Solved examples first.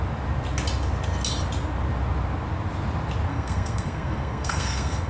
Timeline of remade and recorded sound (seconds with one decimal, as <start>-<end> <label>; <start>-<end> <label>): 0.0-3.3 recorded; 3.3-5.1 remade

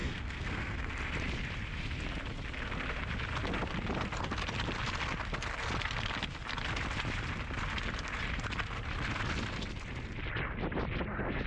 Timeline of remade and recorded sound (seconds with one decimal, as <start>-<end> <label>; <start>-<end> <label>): 0.0-0.8 remade; 0.8-11.5 recorded

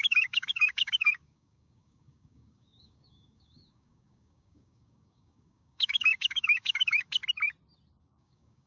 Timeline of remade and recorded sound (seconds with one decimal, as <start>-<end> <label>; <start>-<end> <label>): 0.0-7.2 remade; 7.2-8.0 recorded; 8.0-8.7 remade